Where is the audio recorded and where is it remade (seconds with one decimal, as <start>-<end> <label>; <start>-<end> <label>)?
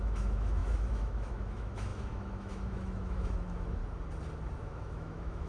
0.0-3.8 remade; 3.8-4.6 recorded; 4.6-5.5 remade